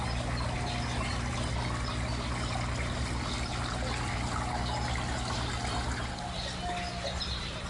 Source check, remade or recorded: recorded